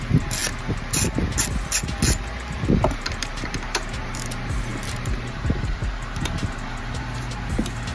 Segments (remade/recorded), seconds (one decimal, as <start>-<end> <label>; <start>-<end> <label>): 0.0-0.4 remade; 0.4-2.7 recorded; 2.7-7.9 remade